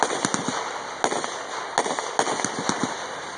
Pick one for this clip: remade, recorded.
recorded